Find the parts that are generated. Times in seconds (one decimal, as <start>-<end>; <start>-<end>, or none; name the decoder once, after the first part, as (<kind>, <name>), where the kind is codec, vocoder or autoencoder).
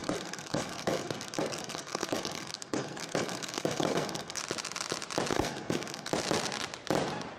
0.0-4.4 (codec, SNAC); 5.3-6.1